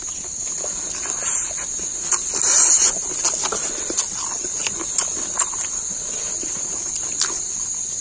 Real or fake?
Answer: real